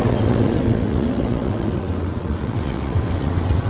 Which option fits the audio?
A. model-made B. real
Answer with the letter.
A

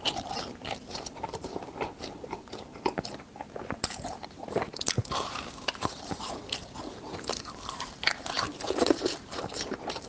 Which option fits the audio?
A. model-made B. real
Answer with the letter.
A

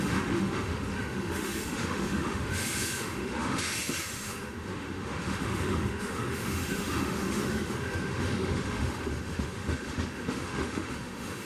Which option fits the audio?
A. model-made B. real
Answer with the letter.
A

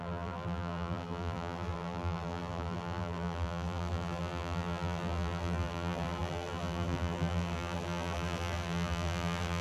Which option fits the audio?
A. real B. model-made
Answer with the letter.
B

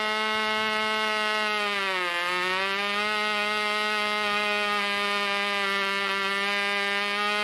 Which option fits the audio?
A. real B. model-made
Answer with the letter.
A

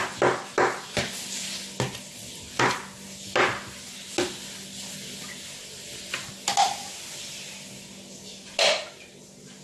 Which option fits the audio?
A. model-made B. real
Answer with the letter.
B